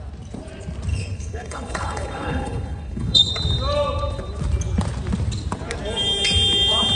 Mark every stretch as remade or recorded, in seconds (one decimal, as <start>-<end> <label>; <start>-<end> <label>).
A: 0.0-0.9 recorded; 0.9-3.3 remade; 3.3-7.0 recorded

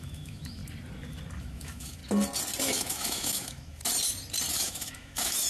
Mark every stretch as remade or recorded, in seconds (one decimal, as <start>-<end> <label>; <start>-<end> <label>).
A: 0.0-0.6 remade; 0.6-1.4 recorded; 1.4-2.0 remade; 2.0-2.6 recorded; 2.6-3.8 remade; 3.8-4.5 recorded; 4.5-5.5 remade

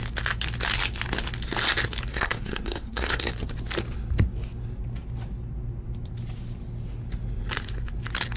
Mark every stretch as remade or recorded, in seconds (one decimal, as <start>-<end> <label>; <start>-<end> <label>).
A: 0.0-2.1 recorded; 2.1-3.3 remade; 3.3-8.4 recorded

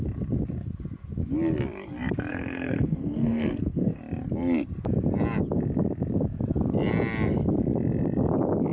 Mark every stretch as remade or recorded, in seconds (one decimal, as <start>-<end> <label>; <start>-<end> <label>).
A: 0.0-2.3 recorded; 2.3-4.0 remade; 4.0-8.7 recorded

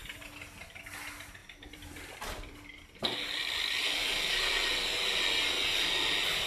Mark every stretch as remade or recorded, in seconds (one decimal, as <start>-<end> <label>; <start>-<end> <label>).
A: 0.0-1.4 recorded; 1.4-3.0 remade; 3.0-3.8 recorded; 3.8-4.5 remade; 4.5-6.5 recorded